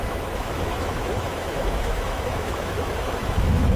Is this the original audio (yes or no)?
no